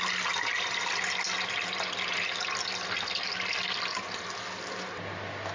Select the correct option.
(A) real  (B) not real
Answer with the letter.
A